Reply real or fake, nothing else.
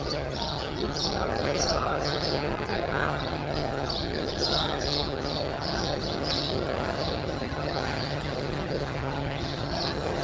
fake